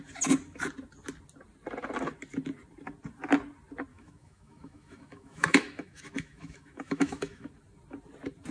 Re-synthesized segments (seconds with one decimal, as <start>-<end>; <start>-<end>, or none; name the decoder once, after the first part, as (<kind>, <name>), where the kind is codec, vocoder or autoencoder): 3.9-7.5 (autoencoder, DAC-VAE)